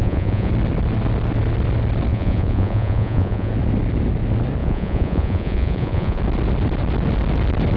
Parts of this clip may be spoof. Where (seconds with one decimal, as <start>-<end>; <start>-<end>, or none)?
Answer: 0.0-0.5; 2.1-3.5; 4.6-6.2